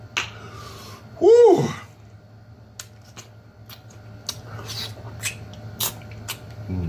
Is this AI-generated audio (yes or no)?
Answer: no